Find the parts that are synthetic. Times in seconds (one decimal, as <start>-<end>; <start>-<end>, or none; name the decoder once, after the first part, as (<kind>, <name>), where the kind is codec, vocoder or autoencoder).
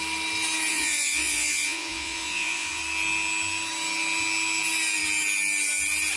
0.7-2.8 (vocoder, Vocos)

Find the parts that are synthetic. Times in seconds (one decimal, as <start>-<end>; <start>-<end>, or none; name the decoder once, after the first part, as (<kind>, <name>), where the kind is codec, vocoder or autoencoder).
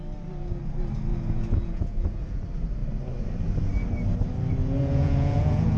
1.1-2.4 (vocoder, Vocos); 4.6-5.8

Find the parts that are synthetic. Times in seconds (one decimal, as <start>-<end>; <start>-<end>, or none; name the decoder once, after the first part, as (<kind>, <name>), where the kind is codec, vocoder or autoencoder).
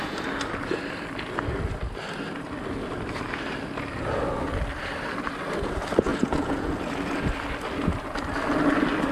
6.1-6.7 (vocoder, Vocos)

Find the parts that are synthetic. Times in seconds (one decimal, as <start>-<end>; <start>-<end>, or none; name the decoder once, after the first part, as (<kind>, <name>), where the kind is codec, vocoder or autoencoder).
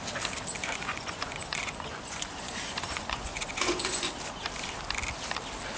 0.6-4.1 (vocoder, Vocos)